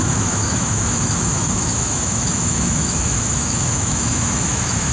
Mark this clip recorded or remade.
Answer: remade